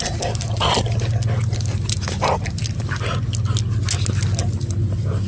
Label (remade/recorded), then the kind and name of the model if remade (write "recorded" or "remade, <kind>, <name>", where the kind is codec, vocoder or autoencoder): recorded